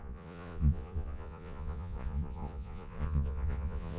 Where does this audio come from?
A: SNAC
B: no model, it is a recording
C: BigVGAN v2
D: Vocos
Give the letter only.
D